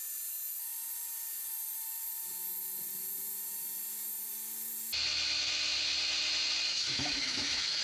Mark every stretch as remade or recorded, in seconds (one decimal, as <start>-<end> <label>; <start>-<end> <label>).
0.0-6.7 recorded; 6.7-7.8 remade